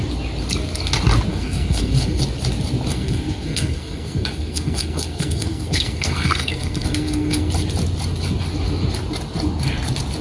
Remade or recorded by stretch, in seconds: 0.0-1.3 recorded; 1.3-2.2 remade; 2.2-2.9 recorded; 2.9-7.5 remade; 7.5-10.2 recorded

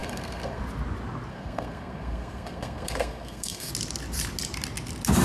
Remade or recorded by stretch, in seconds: 0.0-0.6 remade; 0.6-1.3 recorded; 1.3-3.7 remade; 3.7-5.2 recorded

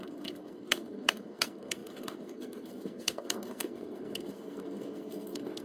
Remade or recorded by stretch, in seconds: 0.0-5.6 remade

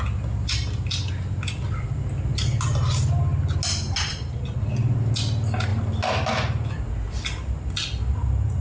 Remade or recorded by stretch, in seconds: 0.0-8.6 recorded

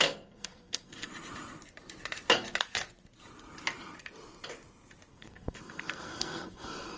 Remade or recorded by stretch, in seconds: 0.0-1.1 remade; 1.1-5.1 recorded; 5.1-7.0 remade